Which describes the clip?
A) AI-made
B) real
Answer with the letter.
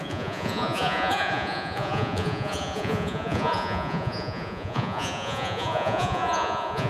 A